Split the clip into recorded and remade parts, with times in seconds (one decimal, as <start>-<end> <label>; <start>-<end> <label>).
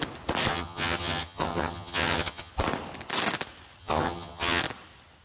0.0-0.5 recorded; 0.5-2.5 remade; 2.5-3.8 recorded; 3.8-4.6 remade; 4.6-5.2 recorded